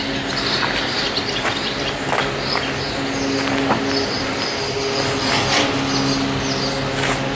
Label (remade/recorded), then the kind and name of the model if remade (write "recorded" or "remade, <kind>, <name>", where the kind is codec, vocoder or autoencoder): recorded